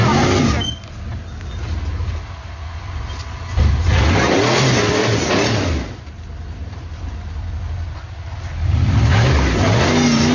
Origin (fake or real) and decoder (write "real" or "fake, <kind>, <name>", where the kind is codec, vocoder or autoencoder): real